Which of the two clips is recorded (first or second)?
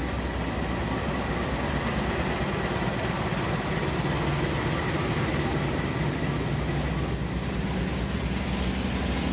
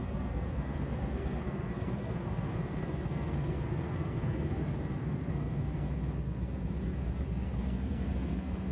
first